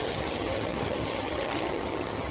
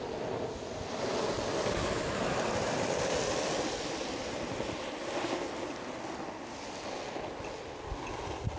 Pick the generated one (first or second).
first